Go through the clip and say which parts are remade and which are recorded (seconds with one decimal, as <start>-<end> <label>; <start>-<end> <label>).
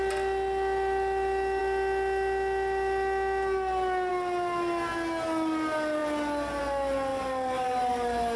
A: 0.0-7.1 recorded; 7.1-8.4 remade